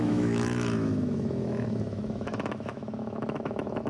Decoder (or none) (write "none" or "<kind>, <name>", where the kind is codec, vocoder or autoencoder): autoencoder, DAC-VAE